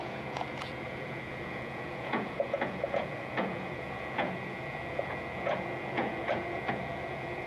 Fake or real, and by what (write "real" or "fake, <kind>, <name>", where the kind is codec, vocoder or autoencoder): fake, vocoder, Vocos